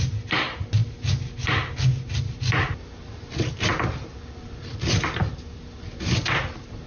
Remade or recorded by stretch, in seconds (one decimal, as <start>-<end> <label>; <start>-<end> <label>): 0.0-3.7 recorded; 3.7-5.3 remade; 5.3-6.9 recorded